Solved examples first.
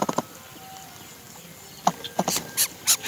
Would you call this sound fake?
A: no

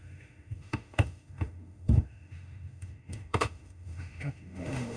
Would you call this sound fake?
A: yes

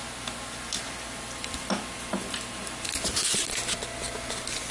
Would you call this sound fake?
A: no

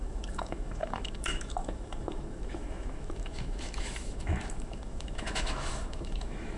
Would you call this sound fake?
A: yes